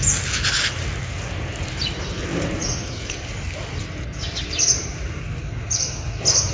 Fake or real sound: real